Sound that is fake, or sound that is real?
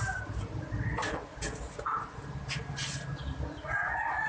real